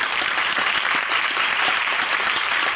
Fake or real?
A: fake